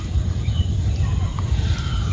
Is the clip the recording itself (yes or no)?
no